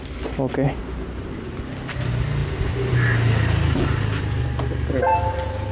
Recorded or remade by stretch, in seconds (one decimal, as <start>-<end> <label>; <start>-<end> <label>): 0.0-5.7 recorded